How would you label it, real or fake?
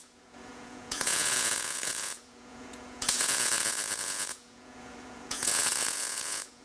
fake